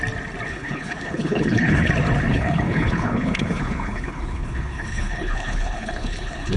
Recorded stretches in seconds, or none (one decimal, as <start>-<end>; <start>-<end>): 0.0-0.5; 1.9-2.3